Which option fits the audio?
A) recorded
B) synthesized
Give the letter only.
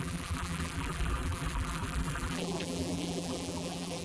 B